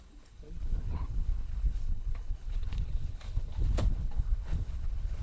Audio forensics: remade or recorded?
remade